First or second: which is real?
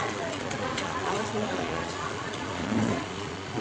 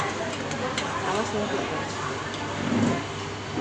second